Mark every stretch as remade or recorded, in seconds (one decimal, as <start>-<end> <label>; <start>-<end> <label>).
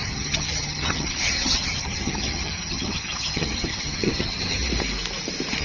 0.0-4.6 remade; 4.6-5.6 recorded